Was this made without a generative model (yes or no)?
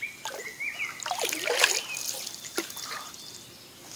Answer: yes